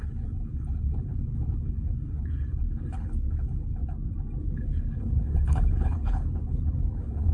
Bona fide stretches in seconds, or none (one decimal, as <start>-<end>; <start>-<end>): 3.8-4.4